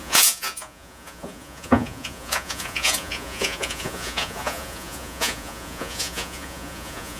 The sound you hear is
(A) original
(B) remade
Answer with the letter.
B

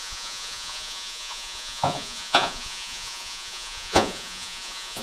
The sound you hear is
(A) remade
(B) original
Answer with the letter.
A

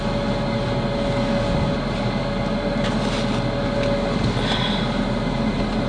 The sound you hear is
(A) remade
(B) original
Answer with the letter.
B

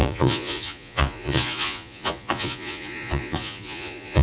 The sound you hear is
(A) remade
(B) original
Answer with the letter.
A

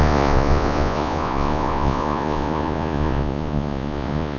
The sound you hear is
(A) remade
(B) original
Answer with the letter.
A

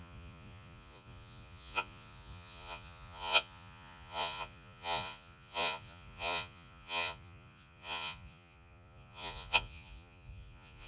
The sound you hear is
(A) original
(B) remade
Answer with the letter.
B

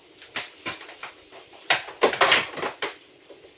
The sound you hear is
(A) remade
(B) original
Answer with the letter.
B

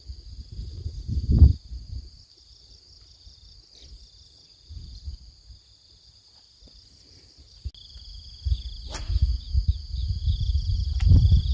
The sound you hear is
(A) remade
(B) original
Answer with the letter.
B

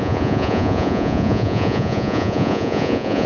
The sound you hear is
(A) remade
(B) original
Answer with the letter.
A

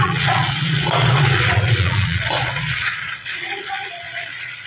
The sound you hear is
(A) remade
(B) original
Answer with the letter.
A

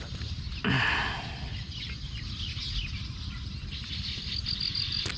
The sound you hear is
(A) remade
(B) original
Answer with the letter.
B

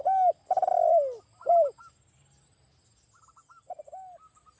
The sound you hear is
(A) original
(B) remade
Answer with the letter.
A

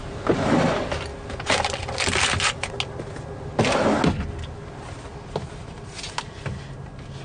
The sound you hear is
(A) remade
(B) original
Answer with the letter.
B